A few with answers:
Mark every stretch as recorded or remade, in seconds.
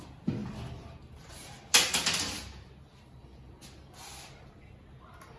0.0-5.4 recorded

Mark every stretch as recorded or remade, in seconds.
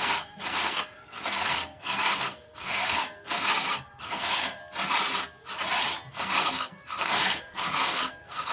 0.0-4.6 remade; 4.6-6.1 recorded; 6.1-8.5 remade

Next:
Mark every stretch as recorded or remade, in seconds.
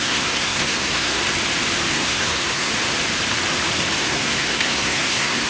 0.0-1.2 remade; 1.2-1.9 recorded; 1.9-2.7 remade; 2.7-4.0 recorded; 4.0-5.5 remade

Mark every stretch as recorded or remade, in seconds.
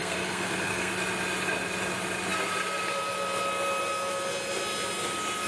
0.0-0.9 remade; 0.9-5.5 recorded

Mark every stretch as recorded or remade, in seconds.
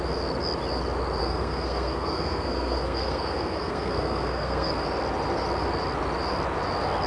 0.0-1.2 recorded; 1.2-4.7 remade; 4.7-7.1 recorded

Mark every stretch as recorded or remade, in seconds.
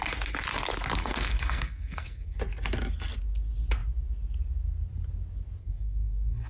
0.0-1.0 recorded; 1.0-2.4 remade; 2.4-5.6 recorded; 5.6-6.5 remade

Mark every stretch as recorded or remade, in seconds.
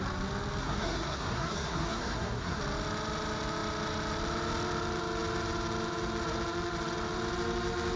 0.0-0.6 recorded; 0.6-2.6 remade; 2.6-8.0 recorded